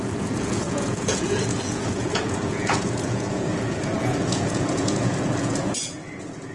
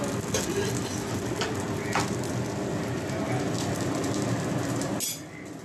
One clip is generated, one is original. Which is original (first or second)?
second